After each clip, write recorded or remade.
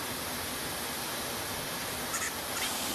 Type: recorded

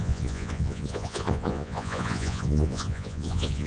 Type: remade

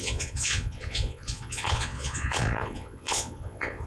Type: remade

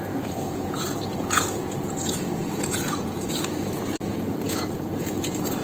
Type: remade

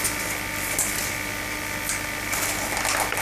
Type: recorded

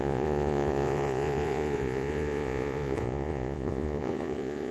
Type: remade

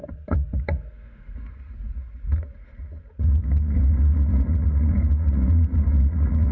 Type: remade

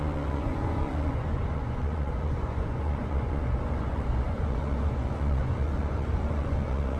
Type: remade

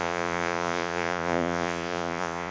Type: remade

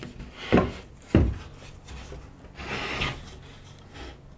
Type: recorded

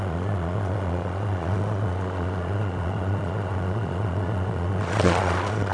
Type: remade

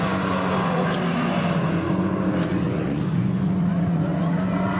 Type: remade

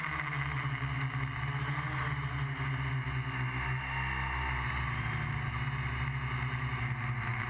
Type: recorded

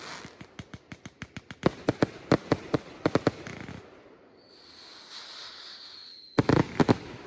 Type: recorded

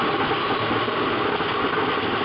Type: recorded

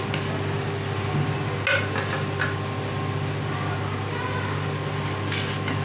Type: recorded